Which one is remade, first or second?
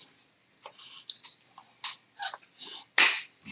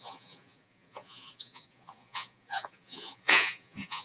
second